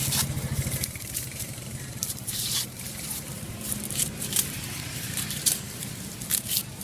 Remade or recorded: remade